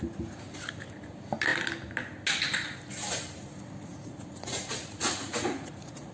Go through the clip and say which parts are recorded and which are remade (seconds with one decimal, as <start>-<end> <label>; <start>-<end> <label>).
0.0-3.9 recorded; 3.9-6.1 remade

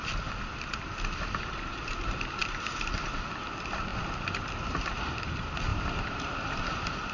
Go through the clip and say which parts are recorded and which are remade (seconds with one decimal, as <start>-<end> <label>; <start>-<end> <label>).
0.0-7.1 remade

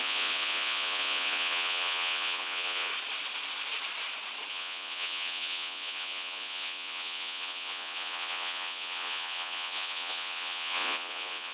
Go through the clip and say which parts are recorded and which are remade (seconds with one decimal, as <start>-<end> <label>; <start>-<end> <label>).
0.0-2.9 remade; 2.9-4.5 recorded; 4.5-11.5 remade

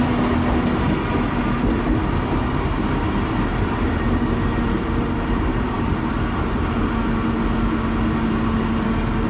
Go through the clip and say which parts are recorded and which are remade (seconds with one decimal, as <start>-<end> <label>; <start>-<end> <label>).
0.0-3.5 recorded; 3.5-6.1 remade; 6.1-9.3 recorded